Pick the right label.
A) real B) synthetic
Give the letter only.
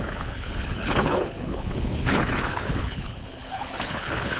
B